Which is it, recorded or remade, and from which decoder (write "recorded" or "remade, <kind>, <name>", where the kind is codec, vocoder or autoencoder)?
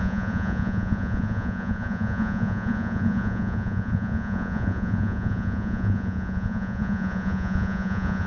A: remade, vocoder, Vocos